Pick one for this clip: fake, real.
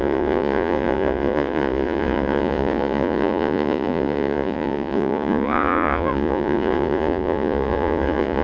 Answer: fake